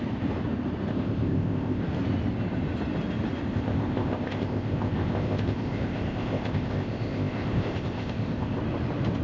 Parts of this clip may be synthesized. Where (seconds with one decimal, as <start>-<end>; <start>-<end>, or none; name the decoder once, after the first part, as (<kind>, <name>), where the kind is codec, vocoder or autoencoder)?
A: 0.9-1.8 (codec, ZipCodec); 3.5-8.6